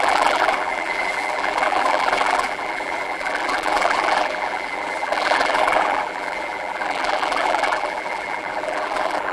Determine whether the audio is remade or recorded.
remade